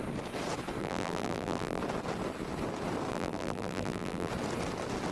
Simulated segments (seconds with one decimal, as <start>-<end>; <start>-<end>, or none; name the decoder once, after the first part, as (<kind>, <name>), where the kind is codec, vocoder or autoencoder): 0.8-1.8 (vocoder, BigVGAN v2); 3.1-4.3